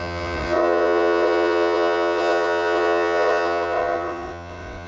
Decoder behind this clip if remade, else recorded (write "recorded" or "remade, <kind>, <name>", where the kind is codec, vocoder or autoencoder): remade, vocoder, WaveNeXt